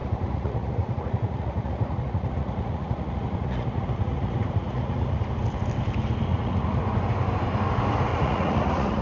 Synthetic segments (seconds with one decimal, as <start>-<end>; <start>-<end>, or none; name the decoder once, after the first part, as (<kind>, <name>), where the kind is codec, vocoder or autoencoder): 0.0-5.2 (vocoder, Vocos); 6.3-6.8; 8.1-9.0

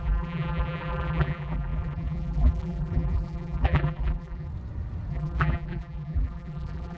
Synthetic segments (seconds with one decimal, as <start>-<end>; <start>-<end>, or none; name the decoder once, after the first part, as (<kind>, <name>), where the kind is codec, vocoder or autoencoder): 0.0-4.5 (vocoder, BigVGAN v2); 5.1-7.0

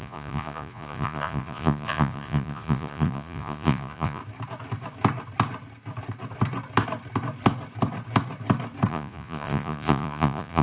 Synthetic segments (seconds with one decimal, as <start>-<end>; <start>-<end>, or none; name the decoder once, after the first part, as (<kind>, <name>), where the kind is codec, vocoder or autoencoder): 0.0-4.2 (vocoder, Vocos); 8.9-10.6

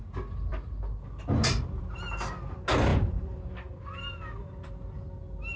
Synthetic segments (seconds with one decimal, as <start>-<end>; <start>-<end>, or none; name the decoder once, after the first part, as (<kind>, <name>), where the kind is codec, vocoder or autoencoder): none

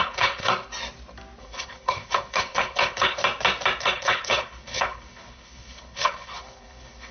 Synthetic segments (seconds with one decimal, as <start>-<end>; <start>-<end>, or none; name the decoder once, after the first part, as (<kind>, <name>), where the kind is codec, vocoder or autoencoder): 0.0-0.5 (codec, HILCodec); 1.4-3.2; 3.8-7.1

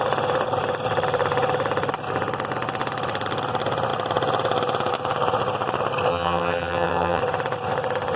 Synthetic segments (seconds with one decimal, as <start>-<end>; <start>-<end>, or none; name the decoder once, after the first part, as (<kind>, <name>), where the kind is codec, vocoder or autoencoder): 6.1-7.2 (vocoder, HiFi-GAN)